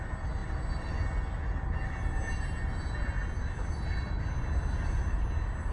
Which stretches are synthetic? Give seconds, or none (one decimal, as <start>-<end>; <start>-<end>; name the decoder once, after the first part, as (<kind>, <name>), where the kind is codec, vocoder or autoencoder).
none